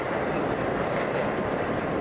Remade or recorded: recorded